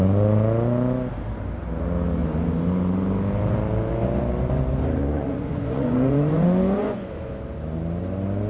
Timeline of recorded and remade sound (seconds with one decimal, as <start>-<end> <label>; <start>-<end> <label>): 0.0-5.0 recorded; 5.0-7.3 remade; 7.3-8.5 recorded